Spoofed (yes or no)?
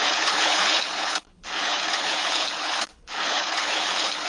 yes